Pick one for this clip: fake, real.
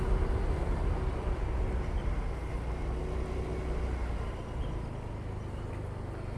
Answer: real